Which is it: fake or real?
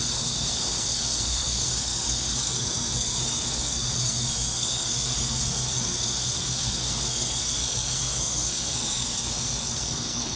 fake